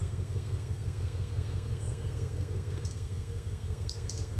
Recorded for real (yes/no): no